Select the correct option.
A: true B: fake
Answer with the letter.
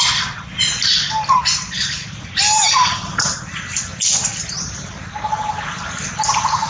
A